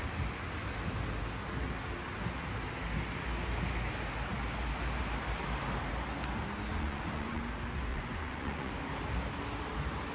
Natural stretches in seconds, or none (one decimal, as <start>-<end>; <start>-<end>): 0.0-6.7; 7.4-7.9; 8.7-10.1